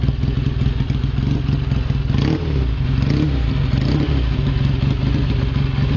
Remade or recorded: recorded